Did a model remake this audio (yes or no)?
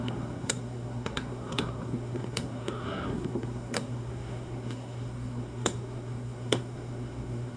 yes